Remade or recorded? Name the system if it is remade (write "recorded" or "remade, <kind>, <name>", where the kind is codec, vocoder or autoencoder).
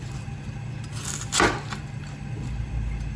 recorded